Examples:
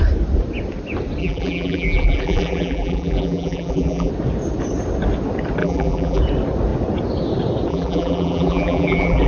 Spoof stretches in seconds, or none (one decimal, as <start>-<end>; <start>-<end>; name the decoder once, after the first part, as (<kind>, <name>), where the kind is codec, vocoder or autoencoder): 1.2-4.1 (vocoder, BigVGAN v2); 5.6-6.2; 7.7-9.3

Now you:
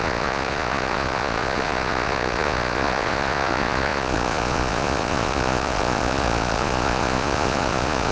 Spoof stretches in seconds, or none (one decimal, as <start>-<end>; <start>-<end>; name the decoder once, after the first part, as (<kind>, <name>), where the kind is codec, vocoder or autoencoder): 0.0-8.1 (vocoder, Vocos)

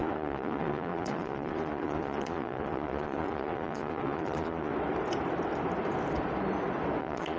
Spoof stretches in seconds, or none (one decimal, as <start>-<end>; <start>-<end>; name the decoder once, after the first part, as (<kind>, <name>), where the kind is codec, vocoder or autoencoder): 0.0-4.7 (vocoder, Vocos); 7.0-7.4